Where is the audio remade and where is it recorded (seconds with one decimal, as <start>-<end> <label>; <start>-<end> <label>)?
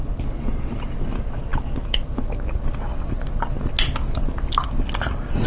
0.0-5.5 recorded